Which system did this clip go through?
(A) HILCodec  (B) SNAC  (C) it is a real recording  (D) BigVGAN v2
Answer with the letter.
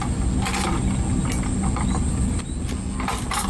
C